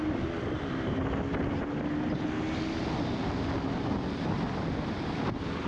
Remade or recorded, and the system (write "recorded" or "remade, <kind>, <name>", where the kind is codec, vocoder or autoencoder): recorded